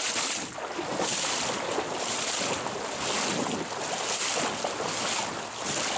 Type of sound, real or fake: real